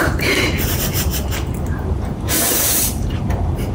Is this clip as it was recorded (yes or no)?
no